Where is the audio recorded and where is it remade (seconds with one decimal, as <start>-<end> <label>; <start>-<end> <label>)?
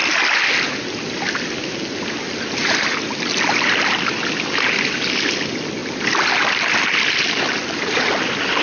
0.0-8.6 recorded